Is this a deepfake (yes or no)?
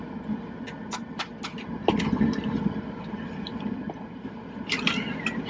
no